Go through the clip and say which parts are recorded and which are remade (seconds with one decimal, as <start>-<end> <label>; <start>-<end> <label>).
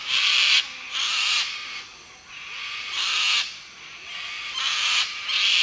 0.0-5.6 recorded